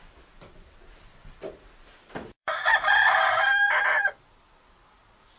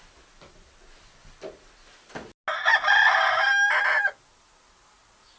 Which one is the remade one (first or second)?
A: first